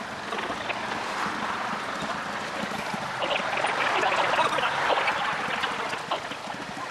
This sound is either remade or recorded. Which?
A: recorded